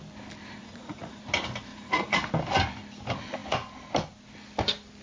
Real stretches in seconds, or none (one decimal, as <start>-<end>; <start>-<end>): 0.0-0.6; 1.2-1.7; 2.3-5.0